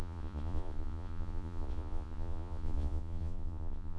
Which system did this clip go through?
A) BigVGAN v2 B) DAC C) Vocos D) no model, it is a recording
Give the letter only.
C